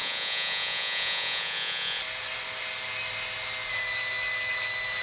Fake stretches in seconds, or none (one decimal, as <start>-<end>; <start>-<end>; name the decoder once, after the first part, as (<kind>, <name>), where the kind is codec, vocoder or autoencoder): 0.0-2.0 (vocoder, Vocos)

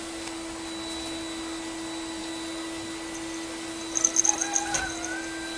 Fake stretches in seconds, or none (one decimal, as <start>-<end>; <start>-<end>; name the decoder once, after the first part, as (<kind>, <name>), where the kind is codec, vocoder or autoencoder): none